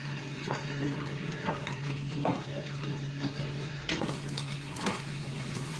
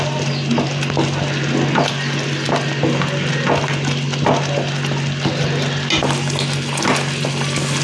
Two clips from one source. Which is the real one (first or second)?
second